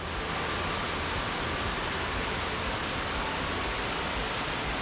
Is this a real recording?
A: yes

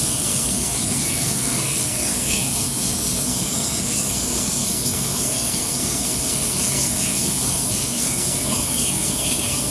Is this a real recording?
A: no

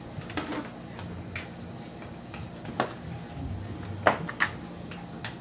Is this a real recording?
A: yes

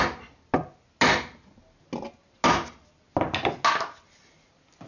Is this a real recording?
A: yes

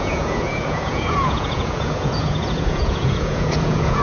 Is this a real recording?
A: no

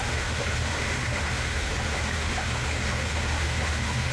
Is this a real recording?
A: no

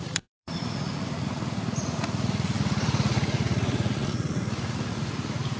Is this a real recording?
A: no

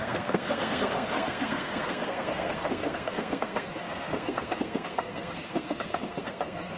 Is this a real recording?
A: no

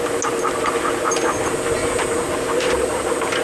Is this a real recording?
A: yes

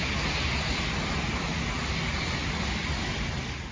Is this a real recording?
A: yes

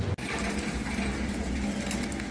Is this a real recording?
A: yes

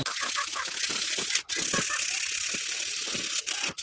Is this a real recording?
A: yes